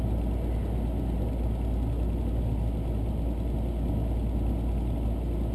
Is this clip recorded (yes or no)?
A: yes